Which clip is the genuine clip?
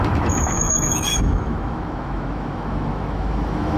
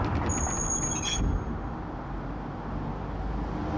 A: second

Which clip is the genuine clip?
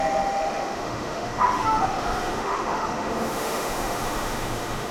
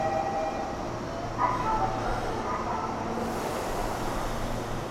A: second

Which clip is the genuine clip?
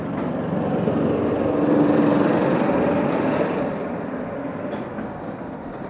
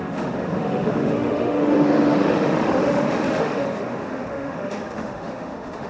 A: first